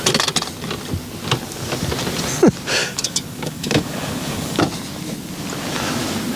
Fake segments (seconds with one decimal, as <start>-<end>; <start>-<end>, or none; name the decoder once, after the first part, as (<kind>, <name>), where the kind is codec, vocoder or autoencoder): 2.8-4.6 (codec, DAC)

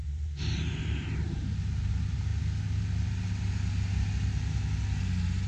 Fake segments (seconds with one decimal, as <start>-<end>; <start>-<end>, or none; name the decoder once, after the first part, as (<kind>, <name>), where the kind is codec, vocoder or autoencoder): 0.0-1.5 (vocoder, BigVGAN v2)

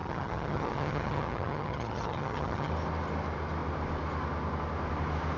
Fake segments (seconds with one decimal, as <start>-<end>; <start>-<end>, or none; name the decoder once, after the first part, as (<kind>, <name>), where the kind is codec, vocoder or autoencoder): 0.0-2.7 (vocoder, HiFi-GAN)

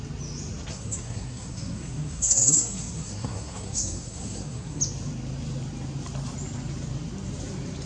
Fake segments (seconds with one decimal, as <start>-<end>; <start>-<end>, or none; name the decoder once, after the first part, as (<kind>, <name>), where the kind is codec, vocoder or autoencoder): 0.7-4.8 (codec, SNAC)

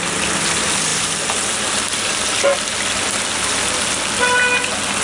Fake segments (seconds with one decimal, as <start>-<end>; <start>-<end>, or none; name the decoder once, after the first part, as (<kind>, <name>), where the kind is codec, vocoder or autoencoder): none

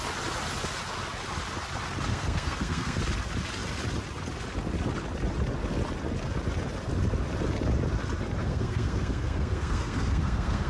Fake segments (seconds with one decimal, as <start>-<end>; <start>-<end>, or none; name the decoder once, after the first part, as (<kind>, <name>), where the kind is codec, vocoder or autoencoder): 2.1-3.0 (codec, SNAC); 8.4-10.7